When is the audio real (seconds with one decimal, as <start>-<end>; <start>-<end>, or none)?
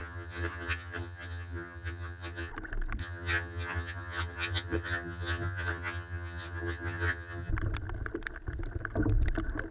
2.5-3.0; 7.5-9.7